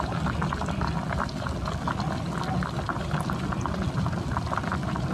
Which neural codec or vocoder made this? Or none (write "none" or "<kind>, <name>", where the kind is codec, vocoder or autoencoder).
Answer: none